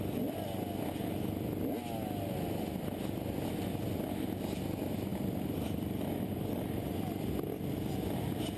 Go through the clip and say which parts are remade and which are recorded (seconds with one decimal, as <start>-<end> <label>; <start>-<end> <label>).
0.0-5.1 recorded; 5.1-7.3 remade; 7.3-8.6 recorded